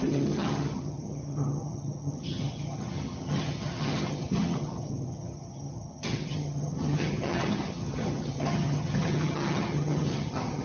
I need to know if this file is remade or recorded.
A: remade